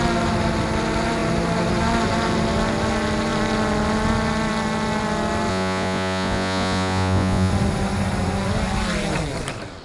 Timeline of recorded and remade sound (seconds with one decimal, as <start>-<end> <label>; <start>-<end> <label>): 0.0-5.5 recorded; 5.5-7.5 remade; 7.5-9.8 recorded